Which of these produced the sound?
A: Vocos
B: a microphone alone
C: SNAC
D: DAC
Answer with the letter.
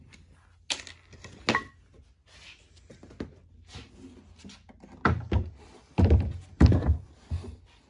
B